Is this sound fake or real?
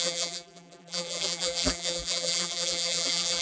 fake